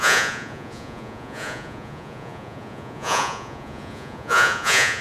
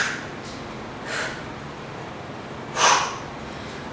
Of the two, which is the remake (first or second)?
first